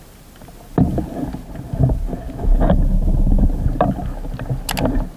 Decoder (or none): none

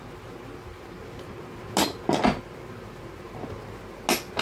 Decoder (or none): none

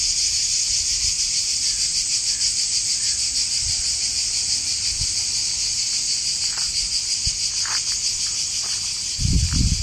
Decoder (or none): none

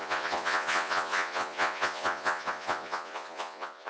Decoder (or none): vocoder, Vocos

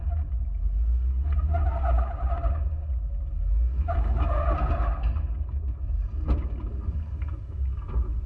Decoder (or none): none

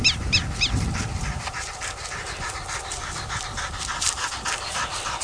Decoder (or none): none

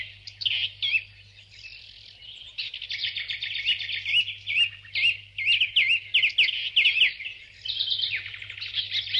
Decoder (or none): none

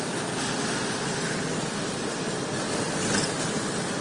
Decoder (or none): none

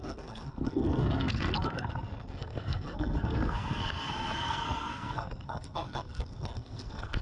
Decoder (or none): codec, SNAC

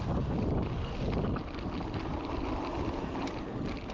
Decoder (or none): none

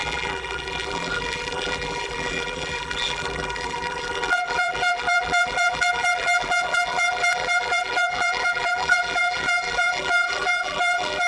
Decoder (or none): vocoder, BigVGAN v2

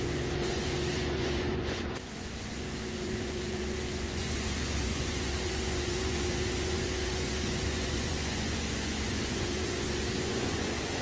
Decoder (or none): vocoder, Vocos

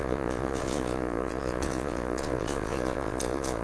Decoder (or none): vocoder, Vocos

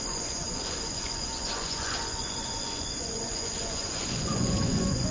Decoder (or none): vocoder, Vocos